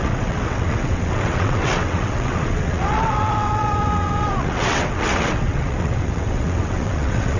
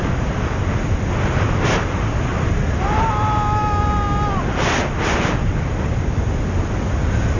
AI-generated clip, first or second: first